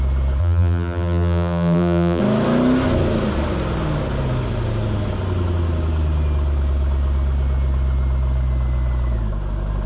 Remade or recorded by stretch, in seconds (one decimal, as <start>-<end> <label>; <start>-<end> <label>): 0.0-0.4 recorded; 0.4-2.2 remade; 2.2-9.9 recorded